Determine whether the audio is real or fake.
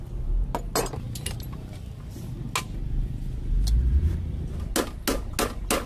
real